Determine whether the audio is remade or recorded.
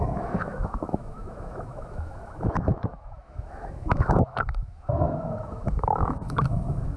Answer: remade